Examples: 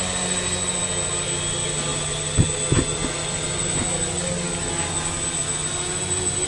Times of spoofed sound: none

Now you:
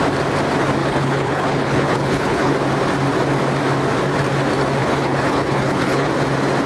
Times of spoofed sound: 0.8-2.5 (codec, HILCodec); 4.8-6.1